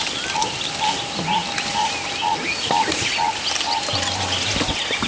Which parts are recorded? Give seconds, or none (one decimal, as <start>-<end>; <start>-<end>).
0.0-5.1